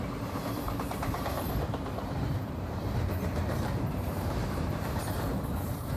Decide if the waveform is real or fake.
fake